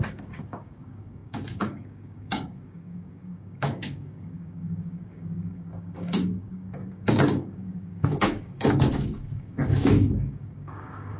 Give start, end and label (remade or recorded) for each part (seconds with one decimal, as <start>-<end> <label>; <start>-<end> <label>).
0.0-11.2 remade